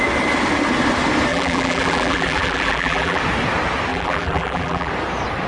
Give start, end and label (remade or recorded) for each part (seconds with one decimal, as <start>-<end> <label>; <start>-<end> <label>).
0.0-1.3 recorded; 1.3-3.2 remade; 3.2-3.9 recorded; 3.9-4.9 remade; 4.9-5.5 recorded